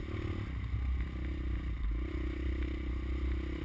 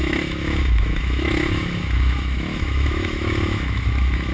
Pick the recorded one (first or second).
first